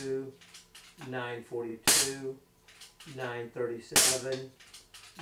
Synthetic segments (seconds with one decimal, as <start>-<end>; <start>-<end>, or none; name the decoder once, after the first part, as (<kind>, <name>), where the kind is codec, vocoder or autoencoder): none